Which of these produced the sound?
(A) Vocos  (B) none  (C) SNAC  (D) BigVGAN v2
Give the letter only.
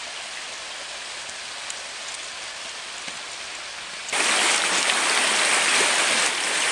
B